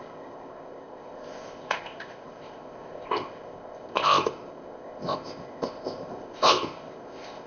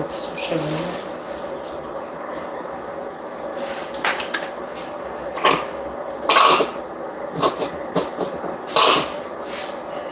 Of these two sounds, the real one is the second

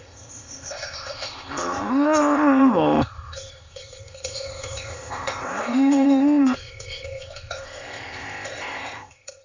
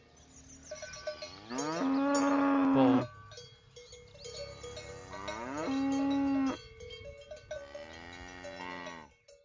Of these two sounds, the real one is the second